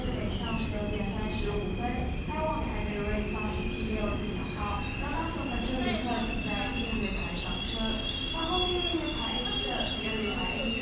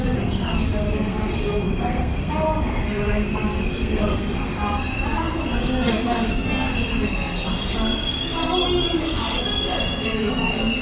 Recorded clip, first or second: first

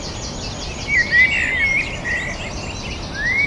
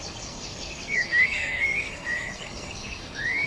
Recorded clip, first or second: first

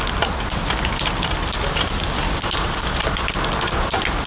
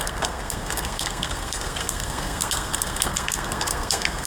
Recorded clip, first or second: first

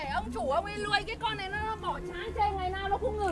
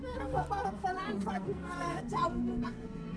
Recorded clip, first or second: first